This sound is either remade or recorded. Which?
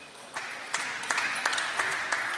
remade